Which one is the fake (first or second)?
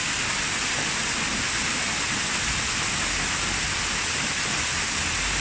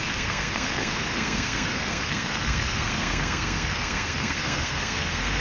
second